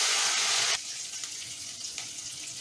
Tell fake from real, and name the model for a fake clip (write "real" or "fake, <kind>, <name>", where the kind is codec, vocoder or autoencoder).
fake, vocoder, Vocos